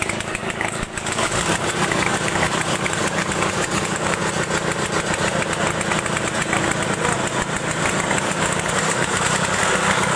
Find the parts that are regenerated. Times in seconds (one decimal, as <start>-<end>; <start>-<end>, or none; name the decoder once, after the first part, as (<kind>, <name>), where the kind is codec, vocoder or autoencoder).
0.0-4.2 (codec, DAC); 8.2-10.2